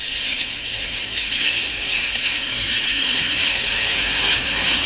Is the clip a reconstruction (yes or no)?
yes